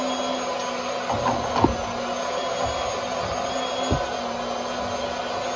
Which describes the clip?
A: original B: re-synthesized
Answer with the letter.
A